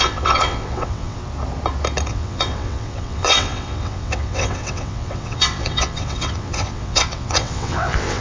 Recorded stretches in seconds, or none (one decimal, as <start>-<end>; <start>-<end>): 1.2-2.1